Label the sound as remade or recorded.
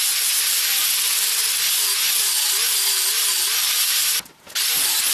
recorded